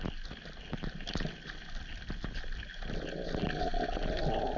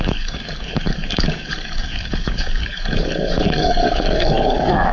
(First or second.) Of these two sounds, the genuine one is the first